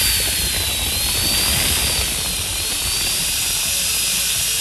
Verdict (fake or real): real